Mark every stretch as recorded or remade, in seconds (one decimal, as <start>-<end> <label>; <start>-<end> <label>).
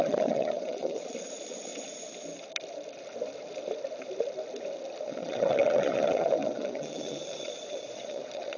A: 0.0-1.7 remade; 1.7-5.0 recorded; 5.0-8.6 remade